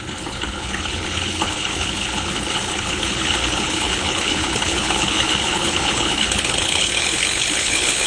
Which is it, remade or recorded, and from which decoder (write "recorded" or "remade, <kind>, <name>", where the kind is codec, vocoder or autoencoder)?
remade, codec, HILCodec